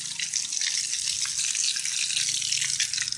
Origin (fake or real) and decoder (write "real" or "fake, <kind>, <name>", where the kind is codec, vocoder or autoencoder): real